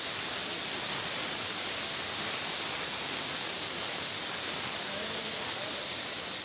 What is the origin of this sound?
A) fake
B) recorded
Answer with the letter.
B